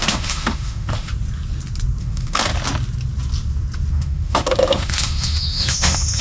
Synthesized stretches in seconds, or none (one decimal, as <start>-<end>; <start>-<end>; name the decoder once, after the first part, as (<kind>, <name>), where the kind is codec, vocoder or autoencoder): 0.0-1.1 (autoencoder, DAC-VAE); 2.0-2.5; 3.9-6.2